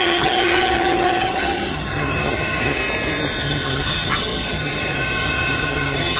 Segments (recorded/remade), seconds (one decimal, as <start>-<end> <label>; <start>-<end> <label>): 0.0-2.8 remade; 2.8-3.4 recorded; 3.4-6.2 remade